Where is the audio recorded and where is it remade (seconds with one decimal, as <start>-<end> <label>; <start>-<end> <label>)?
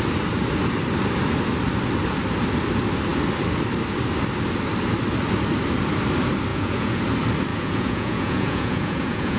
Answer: 0.0-6.5 recorded; 6.5-7.0 remade; 7.0-7.5 recorded; 7.5-9.4 remade